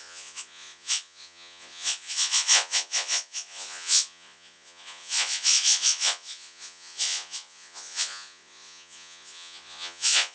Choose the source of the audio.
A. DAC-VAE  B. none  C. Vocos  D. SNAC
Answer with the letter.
C